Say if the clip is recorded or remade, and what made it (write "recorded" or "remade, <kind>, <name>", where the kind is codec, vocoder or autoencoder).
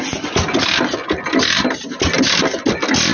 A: recorded